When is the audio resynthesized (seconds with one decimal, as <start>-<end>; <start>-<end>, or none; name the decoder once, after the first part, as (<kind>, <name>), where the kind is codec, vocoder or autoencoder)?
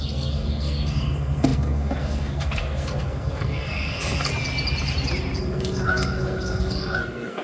0.0-4.3 (codec, SNAC); 5.4-7.4